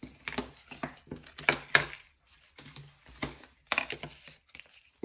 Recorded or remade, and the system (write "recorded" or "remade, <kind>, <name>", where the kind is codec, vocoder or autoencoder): recorded